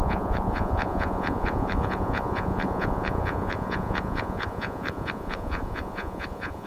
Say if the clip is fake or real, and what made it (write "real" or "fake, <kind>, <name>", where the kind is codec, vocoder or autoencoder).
fake, vocoder, Vocos